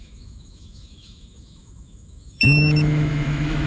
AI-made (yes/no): yes